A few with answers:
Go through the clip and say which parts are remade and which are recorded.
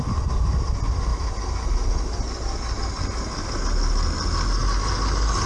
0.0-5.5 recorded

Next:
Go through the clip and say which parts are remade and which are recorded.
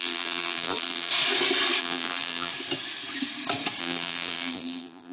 0.0-1.1 remade; 1.1-1.8 recorded; 1.8-2.5 remade; 2.5-3.8 recorded; 3.8-5.1 remade